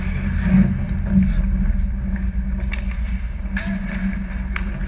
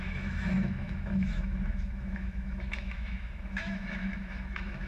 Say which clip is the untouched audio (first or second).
first